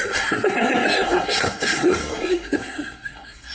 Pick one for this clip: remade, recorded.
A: remade